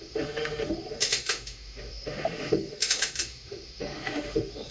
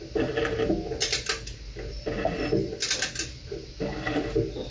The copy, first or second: first